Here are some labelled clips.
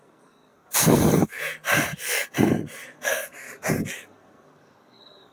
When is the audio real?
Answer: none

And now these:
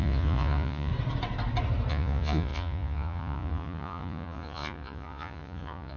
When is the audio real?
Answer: 0.9-1.9

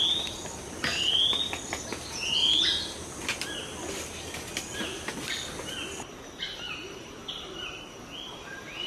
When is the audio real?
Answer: 0.0-7.2; 7.9-8.9

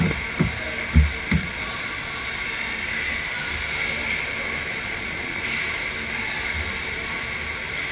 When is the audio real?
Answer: 0.0-1.4; 2.3-4.7; 5.4-7.9

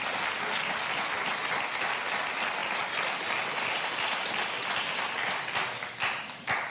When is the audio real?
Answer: 0.0-6.7

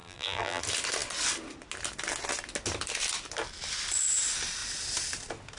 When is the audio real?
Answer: 0.6-5.6

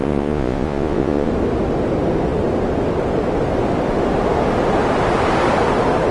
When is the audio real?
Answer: 1.3-6.1

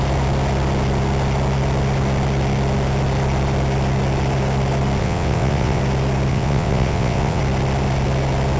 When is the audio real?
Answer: 0.0-5.0; 5.8-6.3; 7.4-8.6